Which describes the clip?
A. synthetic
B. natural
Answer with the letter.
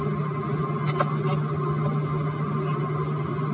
B